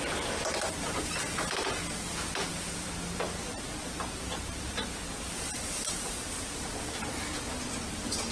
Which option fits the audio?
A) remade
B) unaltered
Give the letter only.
B